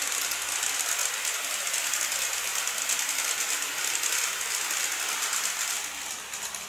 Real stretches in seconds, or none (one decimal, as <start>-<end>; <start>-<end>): 0.0-6.7